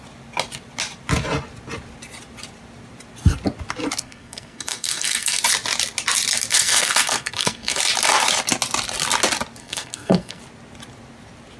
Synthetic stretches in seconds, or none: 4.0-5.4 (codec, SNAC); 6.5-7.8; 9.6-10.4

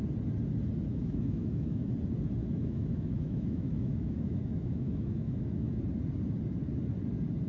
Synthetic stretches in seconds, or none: 0.9-1.9 (autoencoder, DAC-VAE); 2.4-5.8

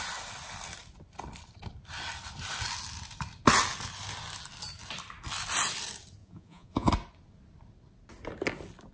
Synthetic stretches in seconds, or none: 6.2-6.9 (vocoder, Vocos)

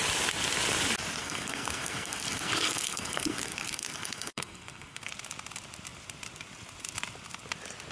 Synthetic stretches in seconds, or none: 1.2-5.1 (codec, SNAC)

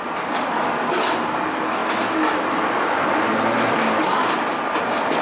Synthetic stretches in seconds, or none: none

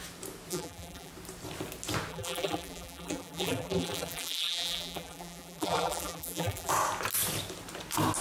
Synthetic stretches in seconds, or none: 0.5-1.1 (vocoder, BigVGAN v2); 2.1-6.7

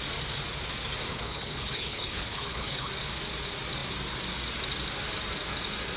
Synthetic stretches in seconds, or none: 1.1-2.9 (codec, HILCodec)

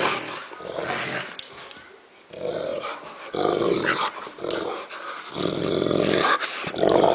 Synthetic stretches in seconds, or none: none